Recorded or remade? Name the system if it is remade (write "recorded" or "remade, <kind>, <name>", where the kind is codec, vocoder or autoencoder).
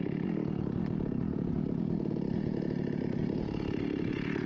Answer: recorded